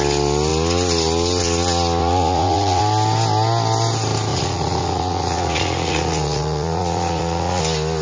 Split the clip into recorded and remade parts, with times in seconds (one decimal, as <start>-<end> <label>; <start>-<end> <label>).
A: 0.0-2.0 recorded; 2.0-2.8 remade; 2.8-4.3 recorded; 4.3-7.6 remade; 7.6-8.0 recorded